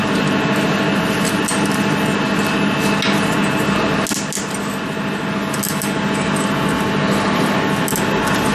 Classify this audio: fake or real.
real